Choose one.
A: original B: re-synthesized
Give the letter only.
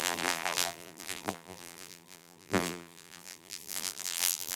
B